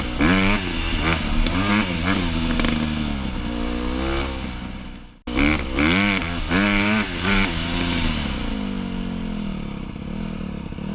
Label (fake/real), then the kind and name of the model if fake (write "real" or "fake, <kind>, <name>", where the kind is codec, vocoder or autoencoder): real